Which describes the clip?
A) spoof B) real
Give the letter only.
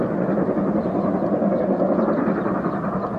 B